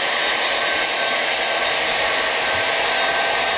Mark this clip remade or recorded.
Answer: recorded